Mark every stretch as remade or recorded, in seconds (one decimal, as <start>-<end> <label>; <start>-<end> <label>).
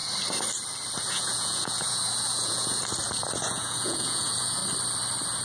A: 0.0-1.1 recorded; 1.1-2.8 remade; 2.8-3.5 recorded; 3.5-4.6 remade; 4.6-5.4 recorded